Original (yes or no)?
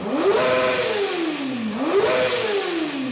yes